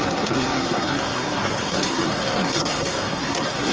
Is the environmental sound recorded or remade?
remade